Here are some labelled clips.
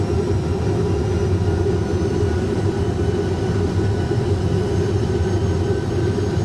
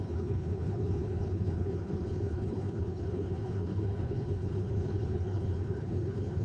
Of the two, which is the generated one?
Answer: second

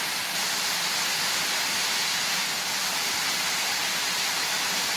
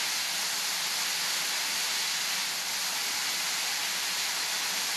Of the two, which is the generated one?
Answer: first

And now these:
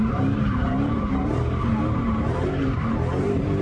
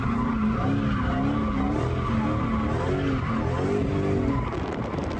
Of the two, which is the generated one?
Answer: first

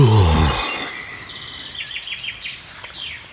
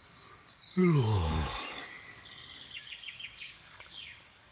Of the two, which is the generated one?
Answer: second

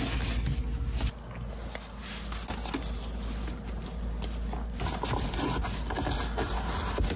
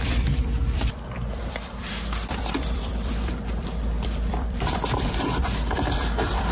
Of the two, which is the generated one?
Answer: second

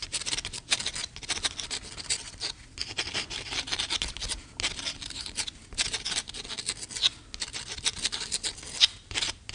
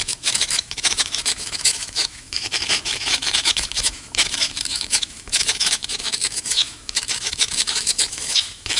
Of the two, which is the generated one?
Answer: second